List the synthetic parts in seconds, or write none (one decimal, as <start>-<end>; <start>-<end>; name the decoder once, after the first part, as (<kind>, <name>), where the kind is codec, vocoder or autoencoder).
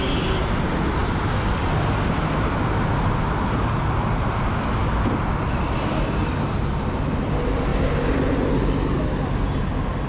1.0-1.9 (vocoder, BigVGAN v2); 7.7-8.5